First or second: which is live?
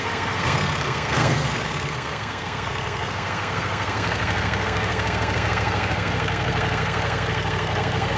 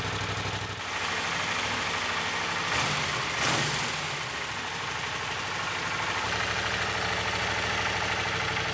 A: second